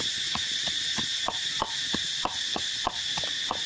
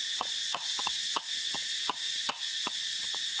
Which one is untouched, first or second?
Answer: first